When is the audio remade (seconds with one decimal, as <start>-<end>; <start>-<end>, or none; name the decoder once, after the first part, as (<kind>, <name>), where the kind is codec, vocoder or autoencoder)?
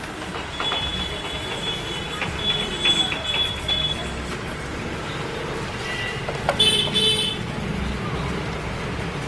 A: none